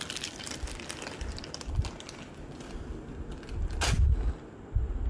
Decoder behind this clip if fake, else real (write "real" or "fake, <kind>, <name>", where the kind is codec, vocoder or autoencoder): real